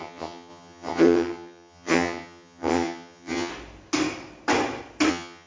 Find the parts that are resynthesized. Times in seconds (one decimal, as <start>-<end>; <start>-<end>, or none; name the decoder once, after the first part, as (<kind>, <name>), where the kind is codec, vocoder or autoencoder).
0.0-3.5 (vocoder, HiFi-GAN); 5.1-5.5

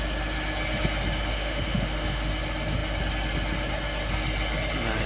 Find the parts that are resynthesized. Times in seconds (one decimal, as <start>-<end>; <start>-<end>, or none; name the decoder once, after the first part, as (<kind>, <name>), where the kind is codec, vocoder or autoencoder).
1.3-2.3 (autoencoder, DAC-VAE)

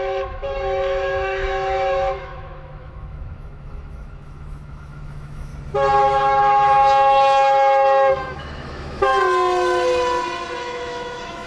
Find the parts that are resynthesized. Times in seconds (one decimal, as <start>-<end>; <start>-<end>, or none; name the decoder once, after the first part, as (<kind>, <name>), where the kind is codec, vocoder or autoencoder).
0.0-5.5 (autoencoder, DAC-VAE); 6.0-9.1; 10.6-11.5

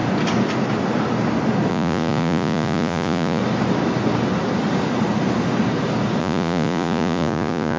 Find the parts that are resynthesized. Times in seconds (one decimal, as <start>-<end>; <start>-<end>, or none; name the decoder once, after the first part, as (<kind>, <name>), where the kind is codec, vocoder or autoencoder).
1.7-3.4 (vocoder, Vocos); 6.2-7.8

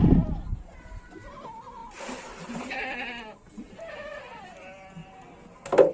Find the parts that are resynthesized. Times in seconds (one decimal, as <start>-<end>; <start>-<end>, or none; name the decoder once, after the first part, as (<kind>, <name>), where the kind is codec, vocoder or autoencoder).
none

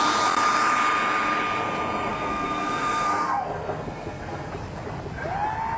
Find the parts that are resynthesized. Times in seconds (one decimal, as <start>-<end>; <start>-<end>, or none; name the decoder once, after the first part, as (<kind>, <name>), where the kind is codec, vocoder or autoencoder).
2.1-4.5 (codec, SNAC)

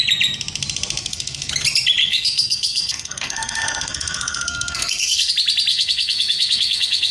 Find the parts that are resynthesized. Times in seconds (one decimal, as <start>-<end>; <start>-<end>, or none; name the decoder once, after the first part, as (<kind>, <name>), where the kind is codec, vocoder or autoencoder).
1.0-1.5 (codec, SNAC); 2.0-5.3; 5.7-7.1